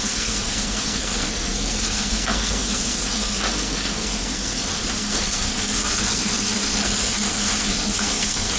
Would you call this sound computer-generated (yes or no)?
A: yes